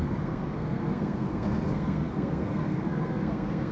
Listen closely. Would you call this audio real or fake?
fake